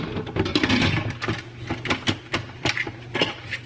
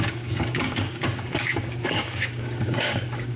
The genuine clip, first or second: first